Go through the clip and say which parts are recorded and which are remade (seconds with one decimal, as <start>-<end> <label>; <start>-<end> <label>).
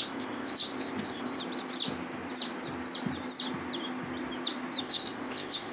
0.0-1.4 remade; 1.4-4.8 recorded; 4.8-5.7 remade